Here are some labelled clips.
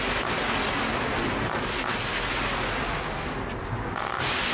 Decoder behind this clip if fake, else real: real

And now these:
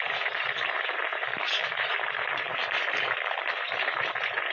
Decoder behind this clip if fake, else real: fake, vocoder, BigVGAN v2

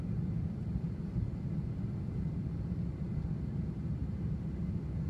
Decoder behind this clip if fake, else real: real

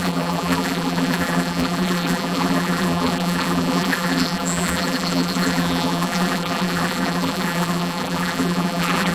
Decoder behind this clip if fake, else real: fake, vocoder, BigVGAN v2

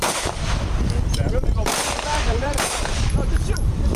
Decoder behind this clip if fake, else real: fake, vocoder, BigVGAN v2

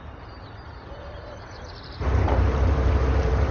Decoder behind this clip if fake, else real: fake, vocoder, BigVGAN v2